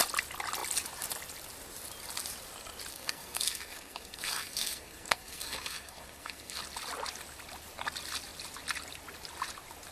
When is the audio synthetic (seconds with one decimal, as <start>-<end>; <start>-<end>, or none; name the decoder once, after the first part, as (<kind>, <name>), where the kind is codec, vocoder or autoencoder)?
2.9-6.6 (codec, SNAC)